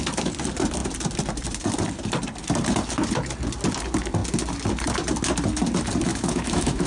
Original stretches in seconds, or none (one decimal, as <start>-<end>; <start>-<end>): 0.0-6.1